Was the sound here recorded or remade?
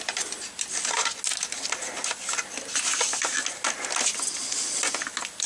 recorded